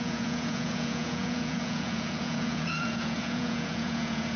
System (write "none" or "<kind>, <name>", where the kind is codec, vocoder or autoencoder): vocoder, Vocos